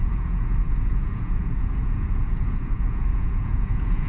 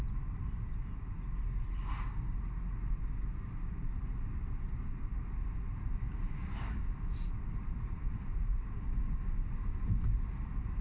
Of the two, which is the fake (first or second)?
first